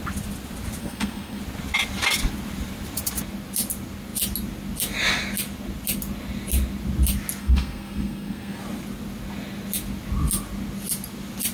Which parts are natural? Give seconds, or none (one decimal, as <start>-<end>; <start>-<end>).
0.0-0.8; 1.4-7.4; 8.6-11.5